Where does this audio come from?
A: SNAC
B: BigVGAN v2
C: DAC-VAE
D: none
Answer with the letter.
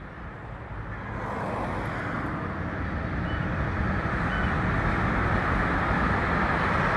D